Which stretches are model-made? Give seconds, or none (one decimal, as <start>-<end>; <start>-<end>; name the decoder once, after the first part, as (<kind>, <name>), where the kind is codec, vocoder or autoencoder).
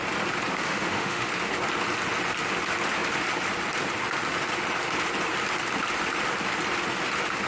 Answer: 0.5-1.3 (autoencoder, DAC-VAE)